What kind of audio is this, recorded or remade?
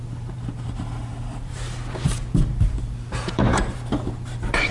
remade